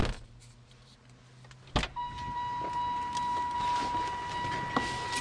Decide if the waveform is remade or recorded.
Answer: recorded